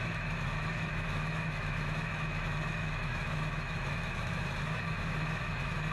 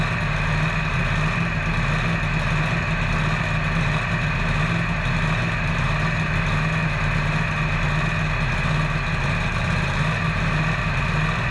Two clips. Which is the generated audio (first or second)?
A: first